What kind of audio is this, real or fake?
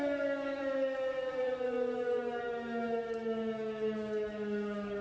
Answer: fake